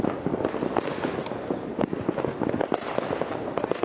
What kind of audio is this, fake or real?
real